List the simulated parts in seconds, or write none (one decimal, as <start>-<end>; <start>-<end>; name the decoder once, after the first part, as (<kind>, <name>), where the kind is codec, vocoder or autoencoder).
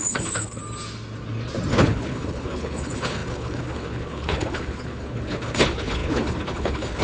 0.0-0.6 (codec, HILCodec); 1.7-7.0